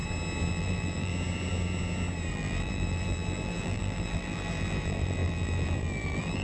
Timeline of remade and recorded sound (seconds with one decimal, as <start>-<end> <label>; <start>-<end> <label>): 0.0-0.5 recorded; 0.5-1.1 remade; 1.1-2.3 recorded; 2.3-6.4 remade